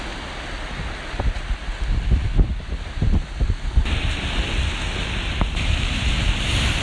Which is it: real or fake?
real